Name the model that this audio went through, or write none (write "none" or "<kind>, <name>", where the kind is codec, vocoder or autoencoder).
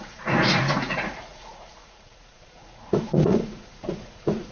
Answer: vocoder, Vocos